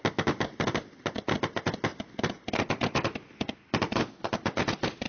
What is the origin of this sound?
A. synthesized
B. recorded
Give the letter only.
B